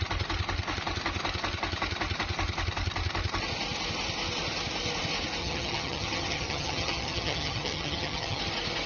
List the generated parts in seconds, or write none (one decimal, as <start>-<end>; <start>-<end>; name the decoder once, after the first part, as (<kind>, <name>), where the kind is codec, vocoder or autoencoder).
5.4-8.4 (vocoder, HiFi-GAN)